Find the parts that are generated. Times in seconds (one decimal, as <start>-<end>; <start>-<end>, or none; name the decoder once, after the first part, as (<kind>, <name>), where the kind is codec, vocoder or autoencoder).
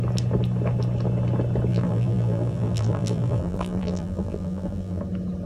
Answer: 1.7-5.0 (vocoder, BigVGAN v2)